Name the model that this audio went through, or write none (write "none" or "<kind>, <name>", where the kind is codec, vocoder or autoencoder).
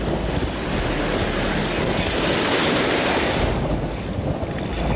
none